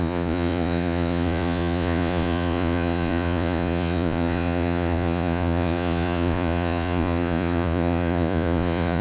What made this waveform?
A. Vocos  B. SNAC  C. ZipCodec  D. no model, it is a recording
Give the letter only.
A